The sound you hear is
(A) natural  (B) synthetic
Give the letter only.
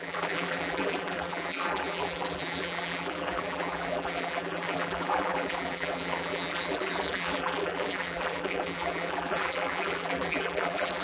B